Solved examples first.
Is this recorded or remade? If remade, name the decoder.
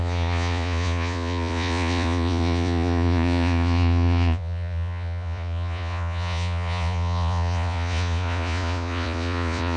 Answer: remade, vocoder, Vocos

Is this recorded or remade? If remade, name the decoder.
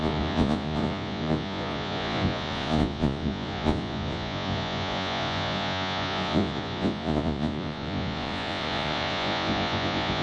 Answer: remade, vocoder, Vocos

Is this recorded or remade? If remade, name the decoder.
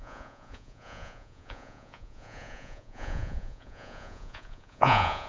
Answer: remade, vocoder, Vocos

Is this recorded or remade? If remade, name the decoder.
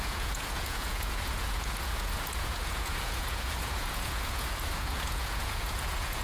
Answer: remade, vocoder, Vocos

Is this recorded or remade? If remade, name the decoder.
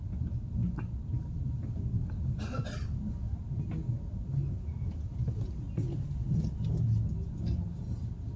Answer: recorded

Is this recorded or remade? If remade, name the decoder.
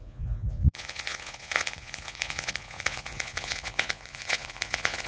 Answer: remade, vocoder, Vocos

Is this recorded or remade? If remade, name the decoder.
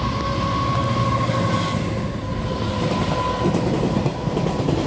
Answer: recorded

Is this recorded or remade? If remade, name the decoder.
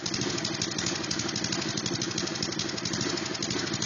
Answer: recorded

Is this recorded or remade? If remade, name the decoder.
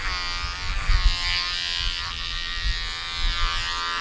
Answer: recorded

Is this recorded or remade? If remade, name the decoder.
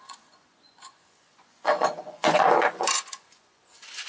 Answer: remade, vocoder, Vocos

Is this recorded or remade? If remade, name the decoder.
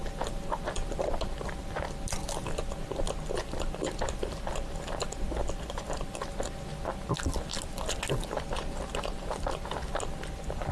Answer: recorded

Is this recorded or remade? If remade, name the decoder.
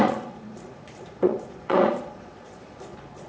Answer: remade, vocoder, Vocos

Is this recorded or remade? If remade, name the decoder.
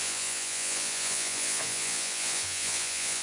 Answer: remade, vocoder, Vocos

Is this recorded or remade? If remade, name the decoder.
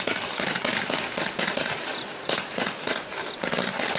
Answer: recorded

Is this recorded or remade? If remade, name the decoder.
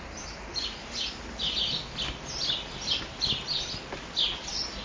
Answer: recorded